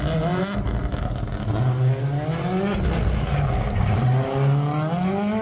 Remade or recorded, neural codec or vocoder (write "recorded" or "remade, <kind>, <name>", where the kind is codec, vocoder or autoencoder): recorded